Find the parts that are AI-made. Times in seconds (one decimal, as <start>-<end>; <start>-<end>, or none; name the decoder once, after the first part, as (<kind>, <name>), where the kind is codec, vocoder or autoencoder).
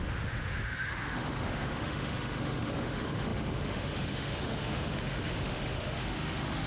0.0-6.7 (autoencoder, DAC-VAE)